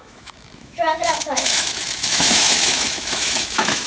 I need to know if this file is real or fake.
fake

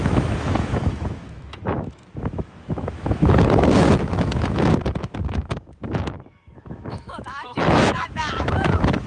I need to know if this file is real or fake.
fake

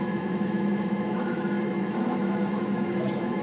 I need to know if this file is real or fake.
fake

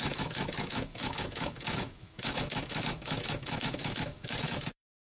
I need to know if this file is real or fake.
fake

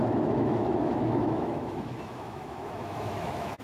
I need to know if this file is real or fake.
fake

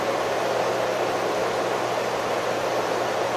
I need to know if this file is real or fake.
real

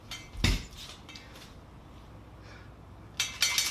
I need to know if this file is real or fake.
real